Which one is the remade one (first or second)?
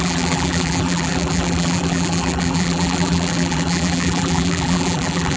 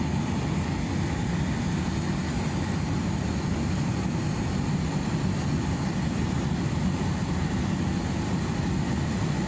first